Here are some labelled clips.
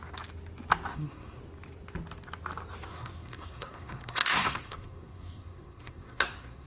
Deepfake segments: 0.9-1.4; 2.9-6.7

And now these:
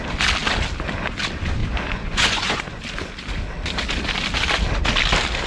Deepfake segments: 1.6-2.8

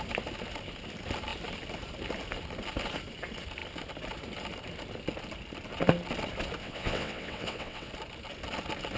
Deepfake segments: 6.6-7.9

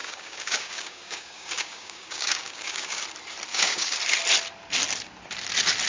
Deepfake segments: 0.0-3.0; 3.5-4.0

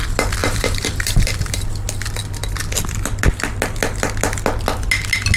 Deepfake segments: 0.4-1.6

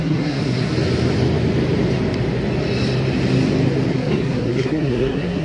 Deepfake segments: 0.0-0.7; 3.9-5.4

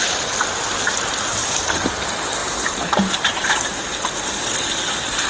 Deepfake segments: 1.4-1.9; 2.4-4.0